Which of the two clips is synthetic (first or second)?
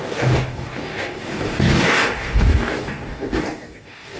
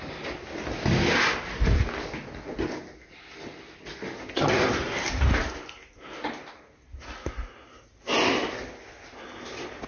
first